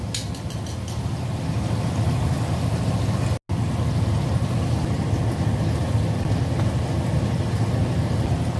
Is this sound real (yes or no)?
yes